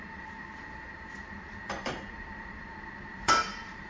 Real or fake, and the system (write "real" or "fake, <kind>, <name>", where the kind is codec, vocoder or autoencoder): fake, vocoder, BigVGAN v2